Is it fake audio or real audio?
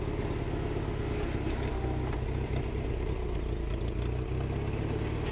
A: real